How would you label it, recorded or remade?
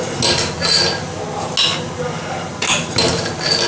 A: recorded